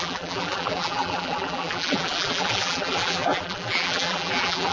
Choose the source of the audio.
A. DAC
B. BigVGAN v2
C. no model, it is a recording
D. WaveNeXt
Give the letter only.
B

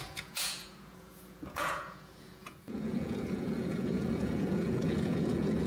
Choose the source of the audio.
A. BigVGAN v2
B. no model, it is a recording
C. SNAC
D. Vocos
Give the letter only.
D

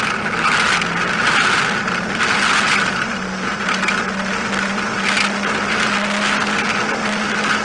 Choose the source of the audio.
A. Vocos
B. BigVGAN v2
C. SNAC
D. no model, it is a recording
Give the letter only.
D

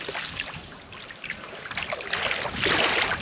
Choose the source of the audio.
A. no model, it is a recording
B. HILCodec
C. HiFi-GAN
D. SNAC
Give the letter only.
A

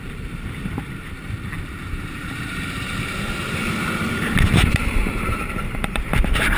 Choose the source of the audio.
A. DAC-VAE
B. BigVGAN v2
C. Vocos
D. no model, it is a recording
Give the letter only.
B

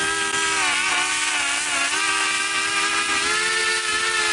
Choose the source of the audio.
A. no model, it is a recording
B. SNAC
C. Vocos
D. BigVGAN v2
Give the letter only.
A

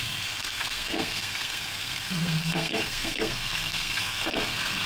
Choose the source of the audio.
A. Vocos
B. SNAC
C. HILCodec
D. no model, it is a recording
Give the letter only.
B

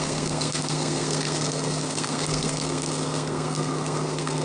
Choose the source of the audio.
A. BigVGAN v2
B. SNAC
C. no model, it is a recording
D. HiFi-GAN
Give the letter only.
B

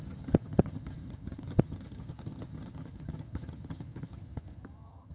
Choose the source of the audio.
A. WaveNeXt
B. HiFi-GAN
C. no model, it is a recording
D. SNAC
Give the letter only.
B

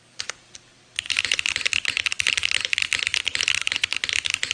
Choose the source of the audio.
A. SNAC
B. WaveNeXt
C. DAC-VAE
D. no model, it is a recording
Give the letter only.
D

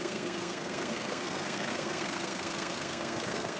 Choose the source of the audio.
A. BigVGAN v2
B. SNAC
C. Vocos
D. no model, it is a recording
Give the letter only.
B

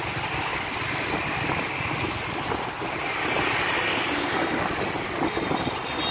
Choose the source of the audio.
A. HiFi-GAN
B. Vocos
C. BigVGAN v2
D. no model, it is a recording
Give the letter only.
D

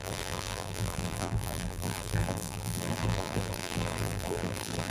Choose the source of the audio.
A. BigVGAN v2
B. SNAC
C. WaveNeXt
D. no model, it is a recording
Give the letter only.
A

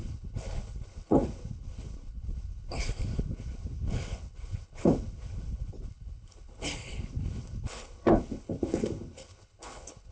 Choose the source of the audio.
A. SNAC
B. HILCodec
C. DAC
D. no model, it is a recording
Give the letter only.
B